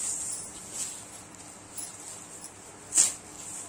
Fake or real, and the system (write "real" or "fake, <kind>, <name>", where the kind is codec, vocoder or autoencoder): real